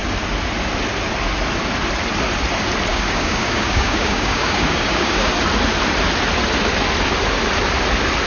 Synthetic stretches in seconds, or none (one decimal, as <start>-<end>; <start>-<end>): 2.9-5.3